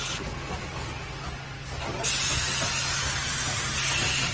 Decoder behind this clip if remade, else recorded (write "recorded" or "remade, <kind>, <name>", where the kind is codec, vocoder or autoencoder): recorded